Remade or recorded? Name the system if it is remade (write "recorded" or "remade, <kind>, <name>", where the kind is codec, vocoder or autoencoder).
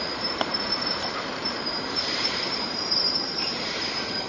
remade, vocoder, BigVGAN v2